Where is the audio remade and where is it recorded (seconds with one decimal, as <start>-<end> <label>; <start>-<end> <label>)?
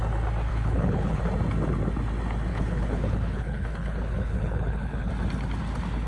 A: 0.0-0.5 recorded; 0.5-1.2 remade; 1.2-2.5 recorded; 2.5-5.1 remade; 5.1-6.1 recorded